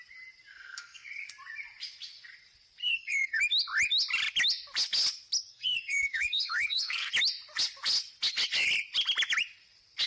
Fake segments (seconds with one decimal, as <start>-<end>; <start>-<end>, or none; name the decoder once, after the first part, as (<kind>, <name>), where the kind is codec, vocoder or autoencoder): 0.5-1.1 (codec, SNAC); 2.8-3.4; 5.5-7.1